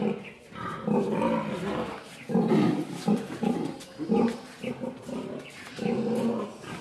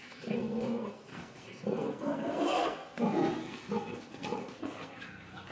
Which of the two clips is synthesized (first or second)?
second